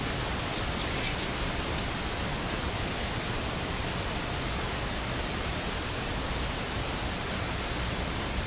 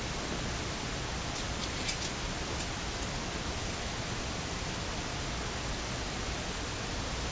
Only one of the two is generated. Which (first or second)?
first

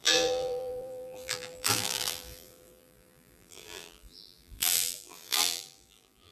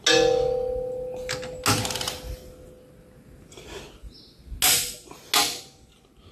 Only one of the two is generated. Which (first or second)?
first